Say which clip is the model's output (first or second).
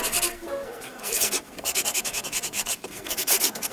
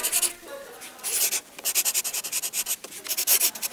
first